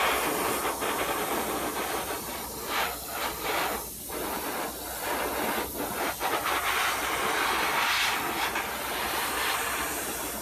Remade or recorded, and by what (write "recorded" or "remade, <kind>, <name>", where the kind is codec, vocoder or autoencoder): remade, vocoder, BigVGAN v2